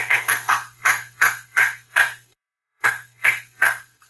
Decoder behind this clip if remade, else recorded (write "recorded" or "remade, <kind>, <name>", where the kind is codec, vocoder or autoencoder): remade, codec, SNAC